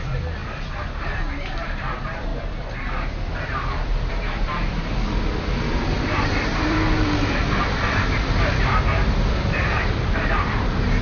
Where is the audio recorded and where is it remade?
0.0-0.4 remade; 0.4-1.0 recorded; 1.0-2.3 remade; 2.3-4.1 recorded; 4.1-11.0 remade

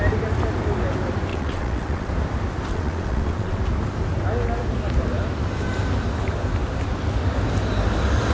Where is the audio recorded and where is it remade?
0.0-1.3 recorded; 1.3-2.1 remade; 2.1-2.7 recorded; 2.7-3.6 remade; 3.6-8.3 recorded